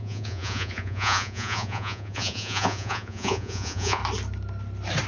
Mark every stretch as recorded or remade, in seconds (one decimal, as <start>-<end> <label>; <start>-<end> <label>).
0.0-4.0 remade; 4.0-5.1 recorded